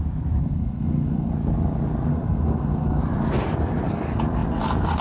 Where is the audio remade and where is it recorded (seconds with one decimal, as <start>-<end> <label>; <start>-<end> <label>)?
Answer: 0.0-0.4 recorded; 0.4-1.3 remade; 1.3-2.1 recorded; 2.1-3.0 remade; 3.0-5.0 recorded